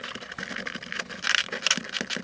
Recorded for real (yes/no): yes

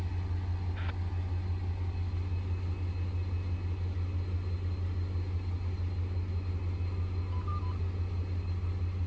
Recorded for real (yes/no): yes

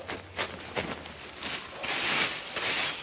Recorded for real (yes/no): yes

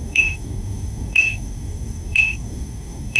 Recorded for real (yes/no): no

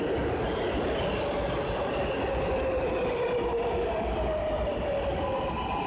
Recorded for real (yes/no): yes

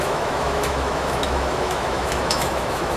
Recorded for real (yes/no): no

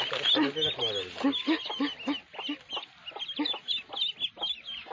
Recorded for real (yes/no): yes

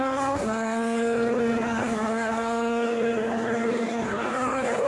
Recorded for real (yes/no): no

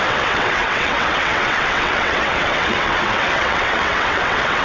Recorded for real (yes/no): no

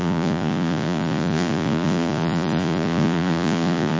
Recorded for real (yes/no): no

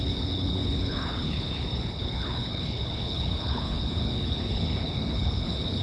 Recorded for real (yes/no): no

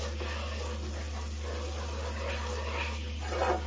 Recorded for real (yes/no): yes